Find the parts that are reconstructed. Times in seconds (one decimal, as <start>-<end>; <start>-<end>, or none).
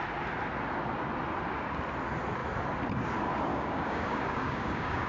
3.5-5.1